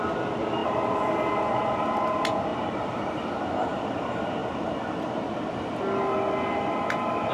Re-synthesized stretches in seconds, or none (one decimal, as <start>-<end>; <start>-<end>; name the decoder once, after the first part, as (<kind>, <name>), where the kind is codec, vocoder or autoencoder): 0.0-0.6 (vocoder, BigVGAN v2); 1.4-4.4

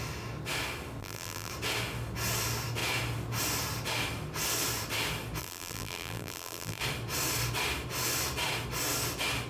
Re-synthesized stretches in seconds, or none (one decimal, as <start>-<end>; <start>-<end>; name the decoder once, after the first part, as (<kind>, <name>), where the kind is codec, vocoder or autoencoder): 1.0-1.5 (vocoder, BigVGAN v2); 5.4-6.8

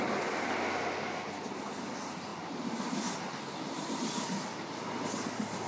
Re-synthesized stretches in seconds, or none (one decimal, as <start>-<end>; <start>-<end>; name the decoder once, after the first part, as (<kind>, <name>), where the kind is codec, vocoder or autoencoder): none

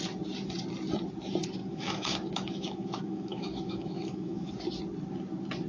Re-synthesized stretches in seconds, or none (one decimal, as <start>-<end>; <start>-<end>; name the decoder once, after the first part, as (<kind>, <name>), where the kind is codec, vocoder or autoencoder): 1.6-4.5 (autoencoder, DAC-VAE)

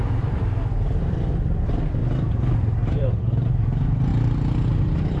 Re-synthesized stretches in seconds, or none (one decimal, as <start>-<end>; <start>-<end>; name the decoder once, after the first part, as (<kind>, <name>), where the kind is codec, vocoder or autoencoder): 0.0-2.0 (vocoder, BigVGAN v2); 2.9-4.1; 4.7-5.2

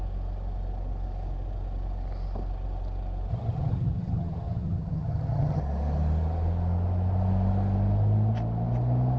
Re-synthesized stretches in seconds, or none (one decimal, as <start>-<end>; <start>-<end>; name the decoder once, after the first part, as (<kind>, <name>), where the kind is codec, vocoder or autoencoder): 3.3-5.6 (vocoder, HiFi-GAN)

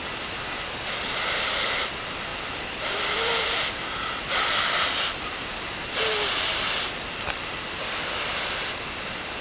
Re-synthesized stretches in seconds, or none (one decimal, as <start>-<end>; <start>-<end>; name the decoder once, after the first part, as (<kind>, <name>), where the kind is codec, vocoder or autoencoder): 2.3-4.2 (vocoder, BigVGAN v2)